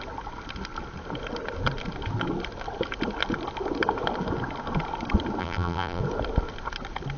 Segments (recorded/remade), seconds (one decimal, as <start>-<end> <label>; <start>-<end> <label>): 0.0-5.4 recorded; 5.4-6.0 remade; 6.0-7.2 recorded